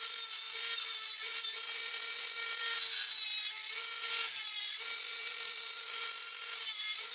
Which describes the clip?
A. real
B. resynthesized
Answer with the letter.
A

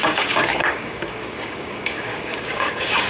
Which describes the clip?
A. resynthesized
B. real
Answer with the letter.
A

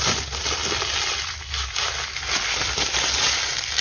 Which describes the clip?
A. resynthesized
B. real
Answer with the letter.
B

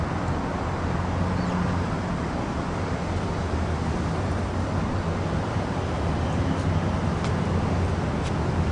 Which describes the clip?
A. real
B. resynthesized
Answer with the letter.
A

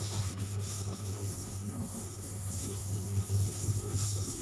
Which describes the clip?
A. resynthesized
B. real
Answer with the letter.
A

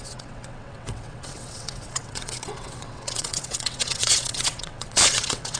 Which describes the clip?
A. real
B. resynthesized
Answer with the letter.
B